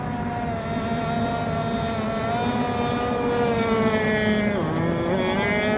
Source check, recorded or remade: recorded